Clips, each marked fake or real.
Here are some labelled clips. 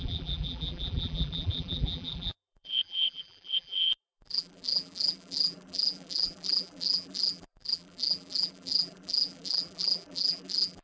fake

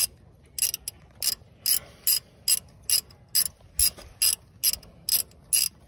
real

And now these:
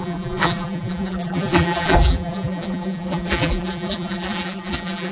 fake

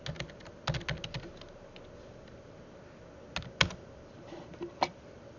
real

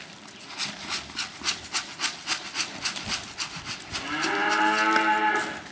real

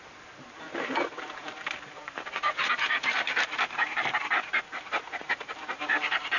fake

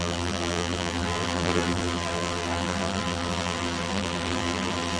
fake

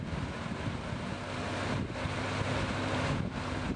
real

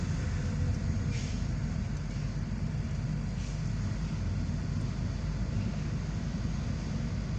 real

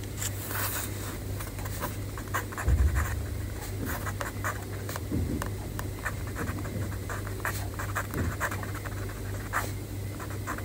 real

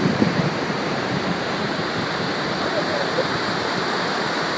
fake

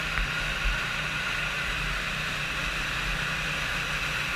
real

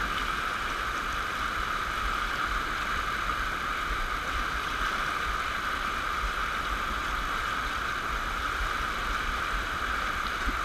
fake